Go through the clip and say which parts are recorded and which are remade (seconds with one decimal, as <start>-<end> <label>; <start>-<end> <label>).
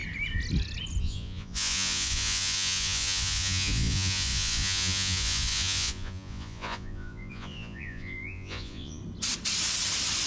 0.0-1.0 recorded; 1.0-9.0 remade; 9.0-10.3 recorded